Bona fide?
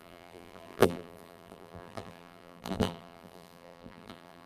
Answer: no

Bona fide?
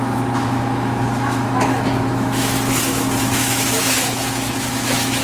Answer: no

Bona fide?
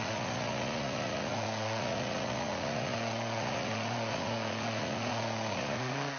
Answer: no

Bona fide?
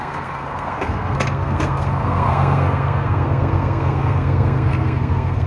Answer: no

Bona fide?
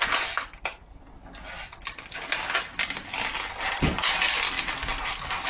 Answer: yes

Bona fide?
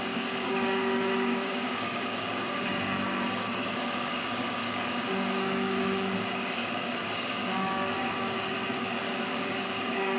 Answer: no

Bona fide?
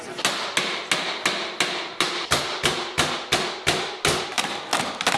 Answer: yes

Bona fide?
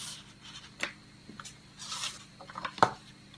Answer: no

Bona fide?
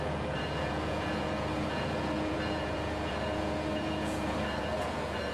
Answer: no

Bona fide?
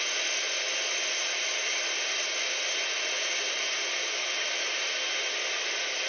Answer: no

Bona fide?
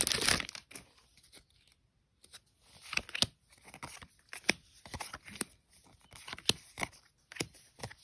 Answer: yes